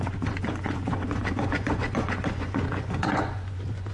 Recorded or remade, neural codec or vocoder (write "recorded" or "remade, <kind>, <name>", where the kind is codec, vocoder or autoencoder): remade, vocoder, Vocos